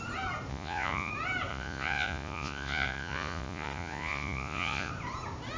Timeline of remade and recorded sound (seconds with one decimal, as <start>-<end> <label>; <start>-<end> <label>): 0.0-0.5 recorded; 0.5-1.1 remade; 1.1-1.5 recorded; 1.5-4.9 remade; 4.9-5.6 recorded